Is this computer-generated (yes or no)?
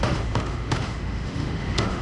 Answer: yes